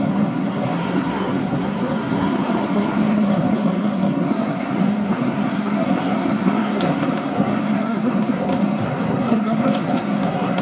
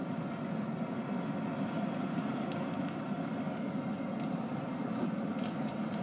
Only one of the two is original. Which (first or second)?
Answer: second